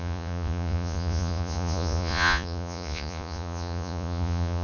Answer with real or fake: fake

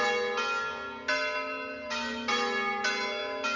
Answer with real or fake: real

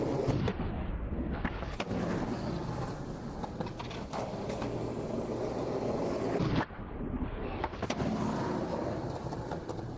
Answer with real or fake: real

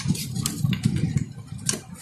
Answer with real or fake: real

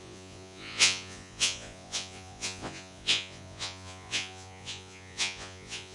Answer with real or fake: fake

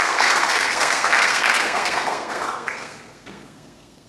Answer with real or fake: fake